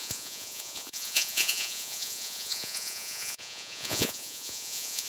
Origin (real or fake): fake